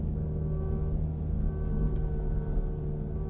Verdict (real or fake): fake